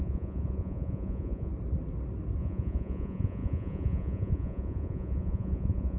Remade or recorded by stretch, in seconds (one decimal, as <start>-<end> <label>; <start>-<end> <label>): 0.0-1.5 remade; 1.5-2.4 recorded; 2.4-6.0 remade